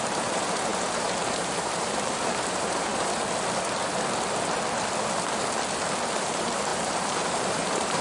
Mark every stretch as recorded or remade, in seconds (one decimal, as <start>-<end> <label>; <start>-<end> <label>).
0.0-2.9 remade; 2.9-6.1 recorded; 6.1-8.0 remade